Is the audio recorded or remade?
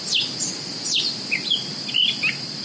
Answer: recorded